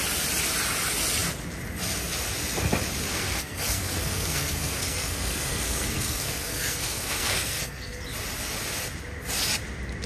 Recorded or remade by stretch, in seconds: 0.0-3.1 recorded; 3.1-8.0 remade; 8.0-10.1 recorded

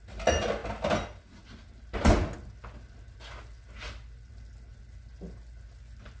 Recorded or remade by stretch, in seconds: 0.0-6.2 recorded